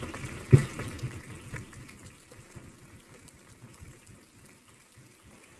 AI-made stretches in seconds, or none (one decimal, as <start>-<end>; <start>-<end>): 0.0-0.6; 4.0-5.6